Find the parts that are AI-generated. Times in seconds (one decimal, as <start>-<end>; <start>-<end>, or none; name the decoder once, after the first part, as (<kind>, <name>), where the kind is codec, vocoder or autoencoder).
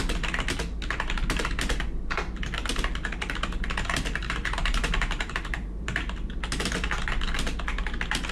4.2-6.3 (vocoder, BigVGAN v2)